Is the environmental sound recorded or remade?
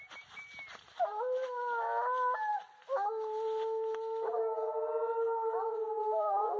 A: recorded